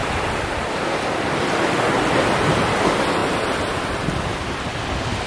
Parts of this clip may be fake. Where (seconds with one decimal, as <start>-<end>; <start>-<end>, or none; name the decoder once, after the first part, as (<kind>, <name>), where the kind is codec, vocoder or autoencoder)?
0.0-1.1 (vocoder, BigVGAN v2)